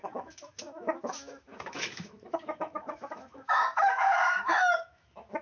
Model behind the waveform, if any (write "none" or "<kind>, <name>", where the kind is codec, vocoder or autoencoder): autoencoder, DAC-VAE